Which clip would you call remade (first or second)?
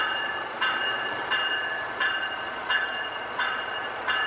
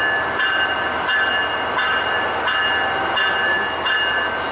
first